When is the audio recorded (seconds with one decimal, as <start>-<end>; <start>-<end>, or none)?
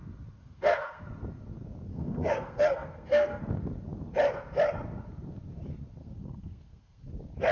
0.0-0.4; 1.0-1.9; 3.4-6.0; 7.1-7.5